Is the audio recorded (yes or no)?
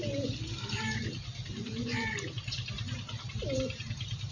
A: yes